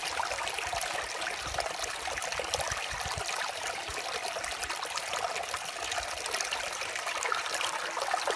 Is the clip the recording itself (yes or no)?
yes